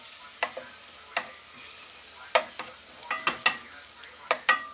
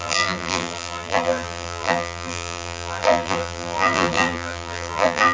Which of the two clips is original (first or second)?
first